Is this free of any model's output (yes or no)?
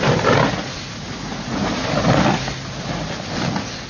yes